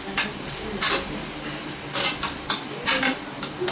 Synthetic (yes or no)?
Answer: no